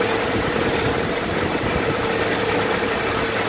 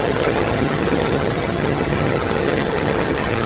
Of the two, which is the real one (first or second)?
first